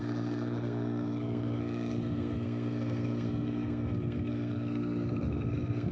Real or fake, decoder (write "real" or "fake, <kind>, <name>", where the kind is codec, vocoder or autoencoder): fake, codec, SNAC